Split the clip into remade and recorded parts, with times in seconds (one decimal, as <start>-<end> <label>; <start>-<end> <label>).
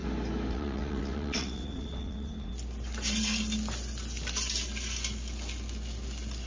0.0-0.5 recorded; 0.5-2.5 remade; 2.5-6.5 recorded